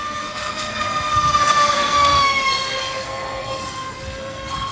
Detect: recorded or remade remade